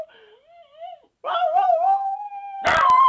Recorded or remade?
recorded